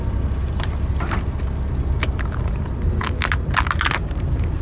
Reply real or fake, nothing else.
real